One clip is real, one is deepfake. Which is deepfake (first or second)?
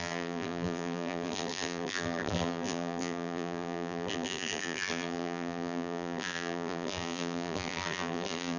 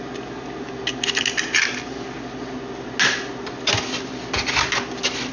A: first